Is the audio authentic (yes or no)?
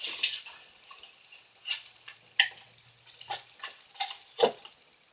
yes